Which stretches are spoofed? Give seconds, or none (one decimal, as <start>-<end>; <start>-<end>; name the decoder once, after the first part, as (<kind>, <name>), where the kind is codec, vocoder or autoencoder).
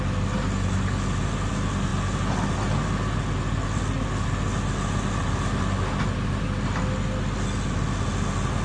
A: none